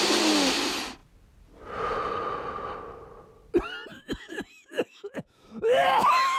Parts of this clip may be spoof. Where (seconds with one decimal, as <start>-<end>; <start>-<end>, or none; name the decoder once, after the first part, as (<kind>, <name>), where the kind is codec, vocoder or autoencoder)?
3.9-6.4 (autoencoder, DAC-VAE)